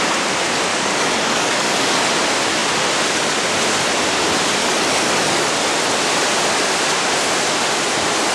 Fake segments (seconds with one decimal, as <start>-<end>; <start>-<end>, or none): 0.7-2.1; 4.6-5.5